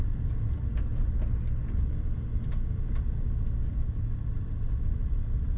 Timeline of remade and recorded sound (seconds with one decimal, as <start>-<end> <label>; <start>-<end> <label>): 0.0-5.6 recorded